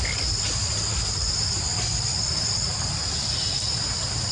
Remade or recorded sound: recorded